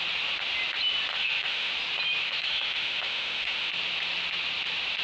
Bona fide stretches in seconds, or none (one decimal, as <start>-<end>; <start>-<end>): 0.0-1.1; 1.7-2.2; 3.7-5.0